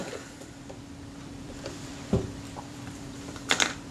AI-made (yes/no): yes